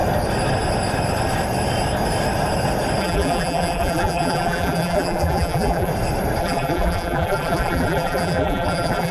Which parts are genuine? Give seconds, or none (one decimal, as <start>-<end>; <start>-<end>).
0.0-3.0; 5.9-6.4